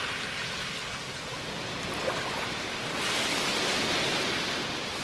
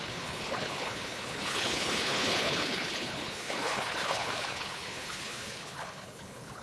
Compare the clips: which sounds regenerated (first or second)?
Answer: second